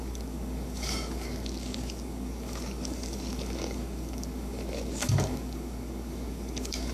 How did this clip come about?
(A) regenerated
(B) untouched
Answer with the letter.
A